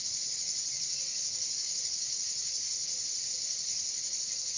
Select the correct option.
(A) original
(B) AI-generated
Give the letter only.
A